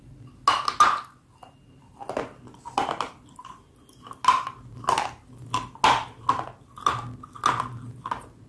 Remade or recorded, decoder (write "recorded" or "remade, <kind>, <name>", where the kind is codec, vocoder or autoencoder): recorded